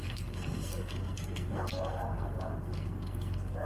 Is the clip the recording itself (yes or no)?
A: no